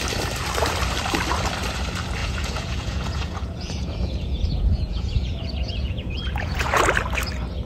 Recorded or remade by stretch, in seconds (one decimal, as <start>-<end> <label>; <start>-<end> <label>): 0.0-2.2 recorded; 2.2-6.8 remade; 6.8-7.6 recorded